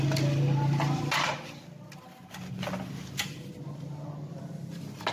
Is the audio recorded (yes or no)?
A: yes